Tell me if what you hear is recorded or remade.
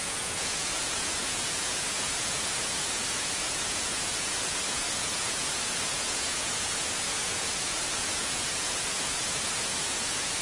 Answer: remade